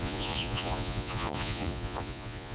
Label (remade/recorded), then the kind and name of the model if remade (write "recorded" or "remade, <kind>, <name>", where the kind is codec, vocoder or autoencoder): remade, vocoder, Vocos